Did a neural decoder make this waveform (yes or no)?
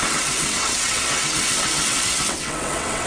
yes